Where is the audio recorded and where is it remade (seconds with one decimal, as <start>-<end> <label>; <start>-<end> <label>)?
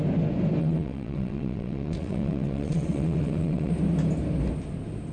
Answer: 0.0-0.6 recorded; 0.6-3.7 remade; 3.7-5.1 recorded